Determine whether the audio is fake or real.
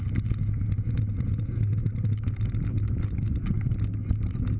real